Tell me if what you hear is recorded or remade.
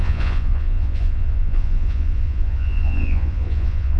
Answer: remade